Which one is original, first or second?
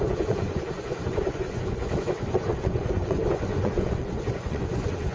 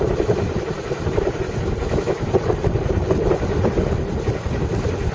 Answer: second